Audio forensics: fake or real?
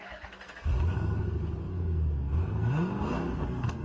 fake